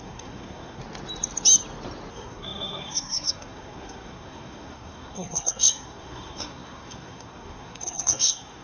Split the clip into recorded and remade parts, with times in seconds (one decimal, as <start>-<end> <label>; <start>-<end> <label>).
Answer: 0.0-0.8 remade; 0.8-2.1 recorded; 2.1-8.6 remade